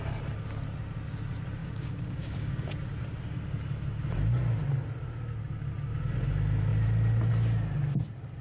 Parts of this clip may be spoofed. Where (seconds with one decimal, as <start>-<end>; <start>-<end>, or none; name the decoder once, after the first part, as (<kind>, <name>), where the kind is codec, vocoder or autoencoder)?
1.6-2.7 (codec, DAC)